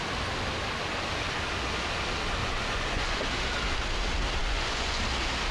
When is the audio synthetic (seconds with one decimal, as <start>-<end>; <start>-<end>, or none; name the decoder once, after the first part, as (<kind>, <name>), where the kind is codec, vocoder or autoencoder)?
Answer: 2.4-3.2 (vocoder, Vocos); 4.4-5.0